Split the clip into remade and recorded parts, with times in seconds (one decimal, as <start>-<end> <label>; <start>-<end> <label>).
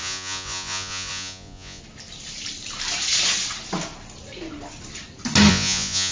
0.0-1.8 remade; 1.8-5.5 recorded; 5.5-6.1 remade